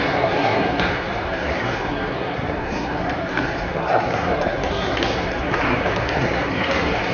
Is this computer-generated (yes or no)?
yes